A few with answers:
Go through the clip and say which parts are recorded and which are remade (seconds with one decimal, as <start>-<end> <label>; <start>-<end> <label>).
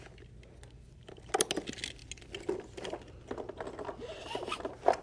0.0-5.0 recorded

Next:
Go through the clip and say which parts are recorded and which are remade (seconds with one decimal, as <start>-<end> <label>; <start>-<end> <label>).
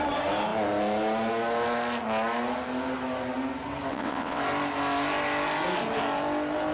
0.0-3.9 recorded; 3.9-4.4 remade; 4.4-6.7 recorded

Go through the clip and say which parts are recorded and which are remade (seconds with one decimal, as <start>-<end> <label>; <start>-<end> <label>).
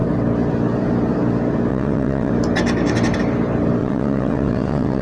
0.0-1.7 recorded; 1.7-2.3 remade; 2.3-3.8 recorded; 3.8-5.0 remade